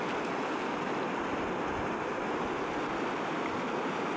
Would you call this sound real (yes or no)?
yes